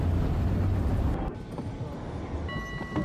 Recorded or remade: recorded